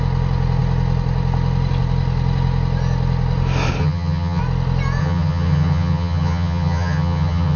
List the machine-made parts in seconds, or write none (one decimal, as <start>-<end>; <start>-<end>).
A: 3.8-4.4; 5.0-7.6